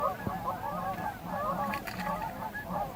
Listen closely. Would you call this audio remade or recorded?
remade